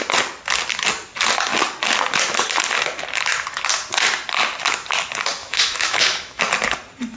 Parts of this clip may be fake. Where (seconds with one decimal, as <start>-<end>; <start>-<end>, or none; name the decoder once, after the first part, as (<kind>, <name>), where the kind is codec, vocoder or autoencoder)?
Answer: 5.4-6.4 (autoencoder, DAC-VAE)